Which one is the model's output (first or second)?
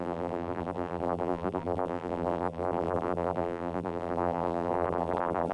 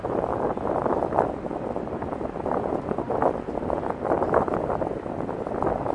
first